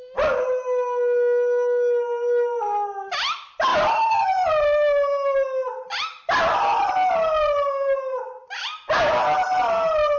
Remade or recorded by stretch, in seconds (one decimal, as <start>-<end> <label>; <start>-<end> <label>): 0.0-3.7 recorded; 3.7-4.5 remade; 4.5-10.2 recorded